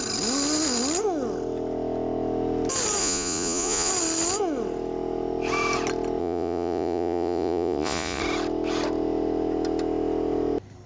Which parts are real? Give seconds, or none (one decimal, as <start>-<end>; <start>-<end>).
0.0-3.0; 3.9-6.2; 8.2-10.9